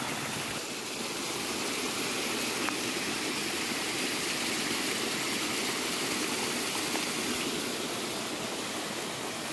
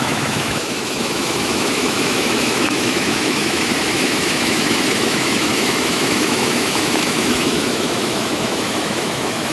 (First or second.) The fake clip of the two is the second